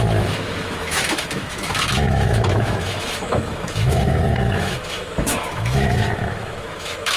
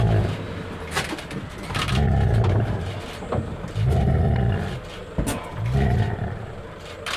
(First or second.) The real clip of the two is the second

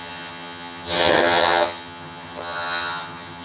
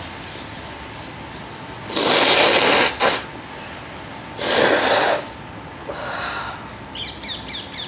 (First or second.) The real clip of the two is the second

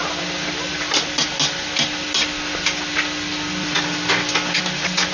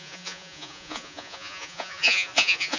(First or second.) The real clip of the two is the first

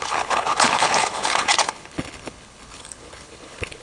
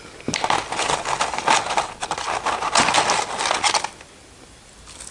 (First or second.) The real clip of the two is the second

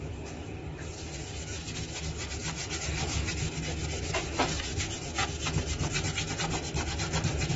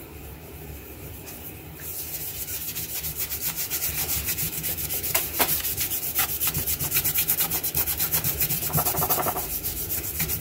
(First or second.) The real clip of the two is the first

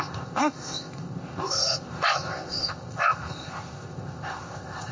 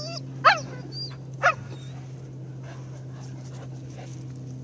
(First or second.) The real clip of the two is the second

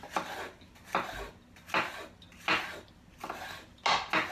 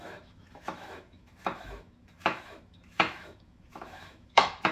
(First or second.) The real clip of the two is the first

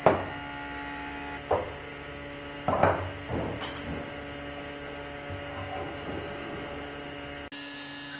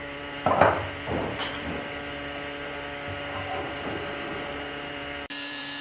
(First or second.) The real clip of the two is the first